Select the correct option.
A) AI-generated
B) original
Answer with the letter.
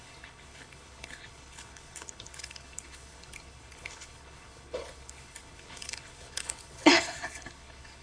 A